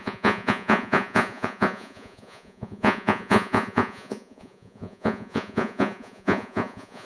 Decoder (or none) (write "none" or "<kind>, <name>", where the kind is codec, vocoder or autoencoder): vocoder, Vocos